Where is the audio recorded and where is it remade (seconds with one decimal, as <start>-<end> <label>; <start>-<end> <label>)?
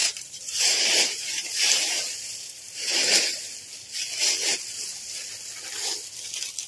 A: 0.0-3.2 remade; 3.2-6.7 recorded